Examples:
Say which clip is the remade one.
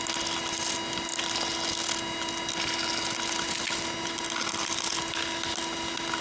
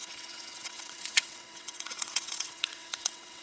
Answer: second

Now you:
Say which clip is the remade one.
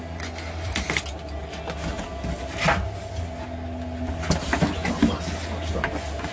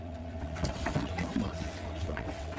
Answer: second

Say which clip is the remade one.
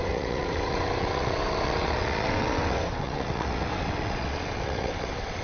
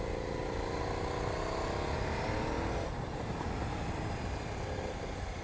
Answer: first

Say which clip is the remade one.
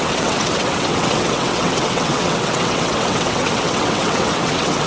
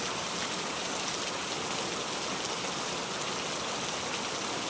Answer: first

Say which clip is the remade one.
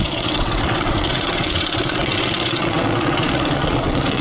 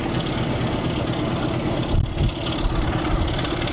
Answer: first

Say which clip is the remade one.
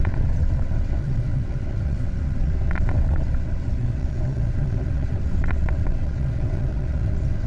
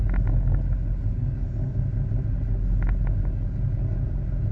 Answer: first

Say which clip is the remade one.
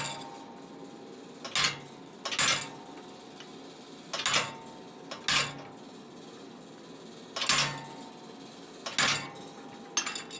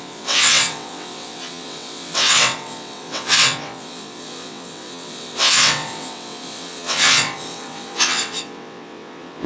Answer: second